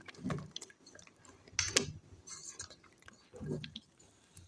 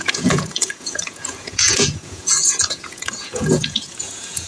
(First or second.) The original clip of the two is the first